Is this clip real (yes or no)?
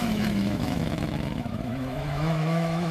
no